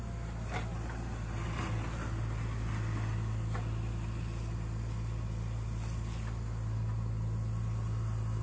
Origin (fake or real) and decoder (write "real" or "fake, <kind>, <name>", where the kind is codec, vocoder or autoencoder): real